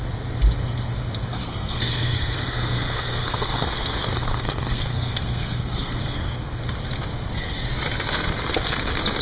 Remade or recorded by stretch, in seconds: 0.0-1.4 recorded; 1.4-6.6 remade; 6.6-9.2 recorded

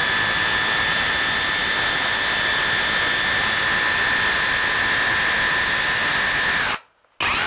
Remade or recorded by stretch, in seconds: 0.0-7.5 recorded

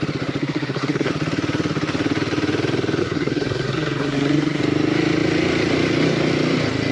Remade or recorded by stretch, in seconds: 0.0-0.4 recorded; 0.4-1.1 remade; 1.1-3.0 recorded; 3.0-4.6 remade; 4.6-6.9 recorded

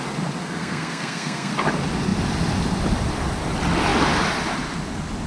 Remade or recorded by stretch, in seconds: 0.0-0.4 recorded; 0.4-1.5 remade; 1.5-5.3 recorded

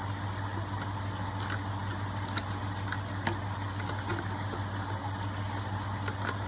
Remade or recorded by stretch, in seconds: 0.0-6.5 recorded